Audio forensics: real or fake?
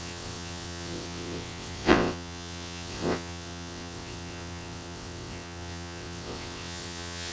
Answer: fake